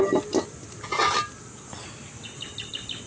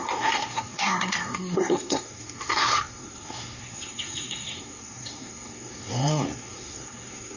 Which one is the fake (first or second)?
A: second